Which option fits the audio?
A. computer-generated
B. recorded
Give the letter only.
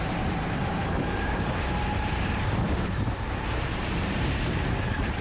A